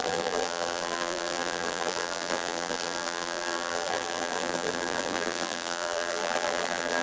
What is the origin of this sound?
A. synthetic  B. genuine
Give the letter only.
A